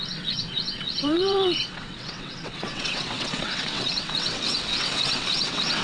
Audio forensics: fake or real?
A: fake